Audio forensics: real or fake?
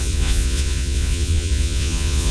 fake